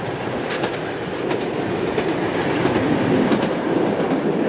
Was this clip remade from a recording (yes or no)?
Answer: no